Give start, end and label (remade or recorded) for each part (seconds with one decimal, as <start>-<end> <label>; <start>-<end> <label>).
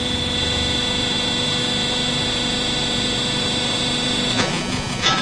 0.0-4.3 recorded; 4.3-5.2 remade